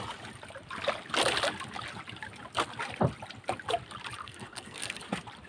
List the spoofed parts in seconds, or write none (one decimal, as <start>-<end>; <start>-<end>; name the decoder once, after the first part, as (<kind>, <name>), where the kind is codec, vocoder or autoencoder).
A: 4.2-5.0 (codec, SNAC)